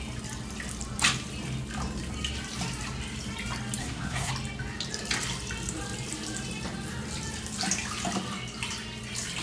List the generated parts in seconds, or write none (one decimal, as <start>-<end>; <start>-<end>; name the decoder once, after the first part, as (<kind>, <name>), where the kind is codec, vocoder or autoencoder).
3.8-4.3 (codec, SNAC)

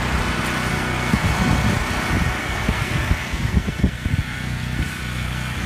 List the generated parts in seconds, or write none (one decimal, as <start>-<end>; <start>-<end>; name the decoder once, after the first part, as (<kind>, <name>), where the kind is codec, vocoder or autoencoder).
0.7-1.3 (codec, SNAC); 2.4-5.7

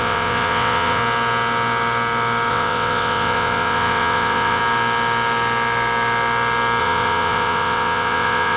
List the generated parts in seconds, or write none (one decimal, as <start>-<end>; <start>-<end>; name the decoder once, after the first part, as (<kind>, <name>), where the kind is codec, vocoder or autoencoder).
0.0-1.0 (vocoder, WaveNeXt); 2.5-4.6; 6.8-8.6

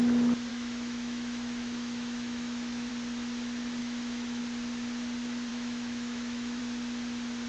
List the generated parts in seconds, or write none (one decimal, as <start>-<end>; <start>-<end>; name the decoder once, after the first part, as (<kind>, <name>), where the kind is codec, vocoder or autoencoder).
0.5-2.9 (autoencoder, DAC-VAE); 3.8-4.4; 5.5-6.6

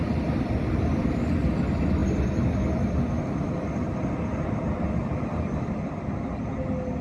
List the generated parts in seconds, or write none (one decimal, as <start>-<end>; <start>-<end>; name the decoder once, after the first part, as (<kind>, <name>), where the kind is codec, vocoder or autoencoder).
none

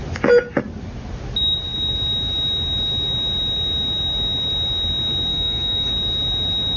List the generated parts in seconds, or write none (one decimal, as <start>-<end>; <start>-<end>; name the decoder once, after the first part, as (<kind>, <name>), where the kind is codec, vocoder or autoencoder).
5.3-5.9 (codec, DAC)

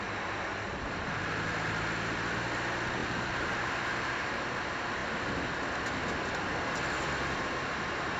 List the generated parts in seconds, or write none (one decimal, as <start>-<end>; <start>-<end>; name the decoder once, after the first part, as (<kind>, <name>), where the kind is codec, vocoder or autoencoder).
0.5-1.3 (vocoder, BigVGAN v2); 3.0-4.4

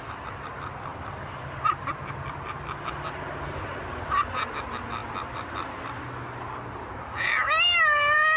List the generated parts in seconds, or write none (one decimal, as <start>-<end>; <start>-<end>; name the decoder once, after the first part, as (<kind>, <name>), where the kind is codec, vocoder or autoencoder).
none